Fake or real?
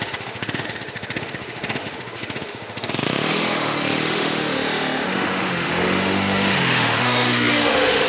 fake